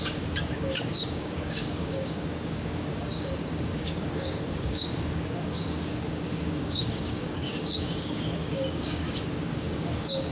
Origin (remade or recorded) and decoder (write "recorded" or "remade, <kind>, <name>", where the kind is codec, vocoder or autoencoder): remade, codec, DAC